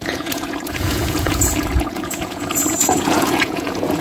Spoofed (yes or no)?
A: yes